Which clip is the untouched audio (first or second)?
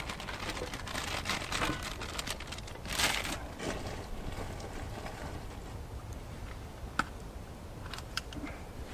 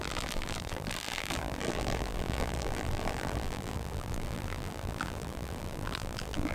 first